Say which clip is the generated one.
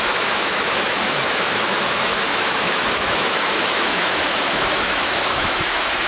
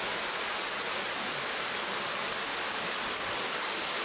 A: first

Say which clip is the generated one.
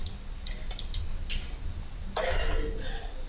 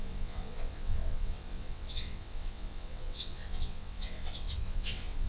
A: second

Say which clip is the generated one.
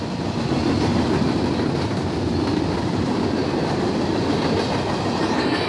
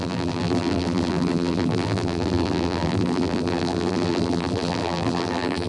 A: second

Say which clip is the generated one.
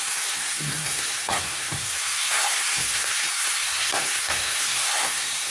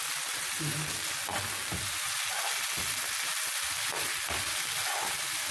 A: first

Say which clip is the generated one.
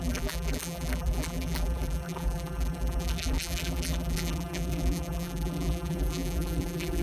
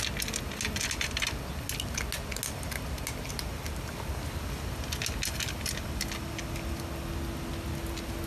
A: first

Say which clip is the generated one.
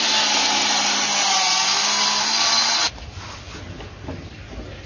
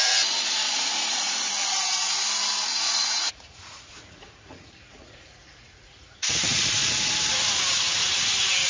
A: second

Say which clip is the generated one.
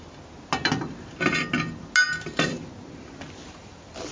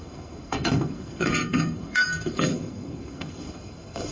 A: second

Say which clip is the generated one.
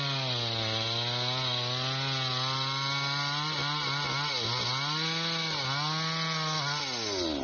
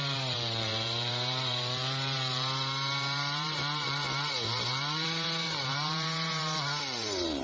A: second